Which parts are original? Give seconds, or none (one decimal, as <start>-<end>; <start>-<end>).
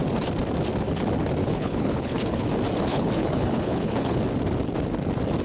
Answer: 0.0-1.4; 2.5-2.9; 4.2-5.4